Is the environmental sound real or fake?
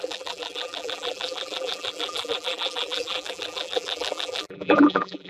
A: fake